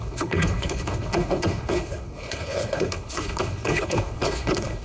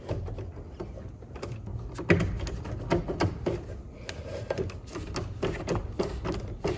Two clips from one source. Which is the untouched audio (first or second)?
second